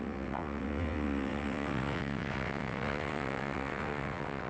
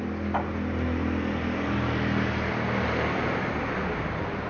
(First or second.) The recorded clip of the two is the second